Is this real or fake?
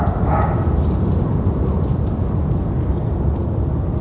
real